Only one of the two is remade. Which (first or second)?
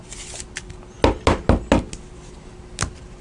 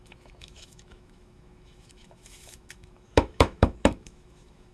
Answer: second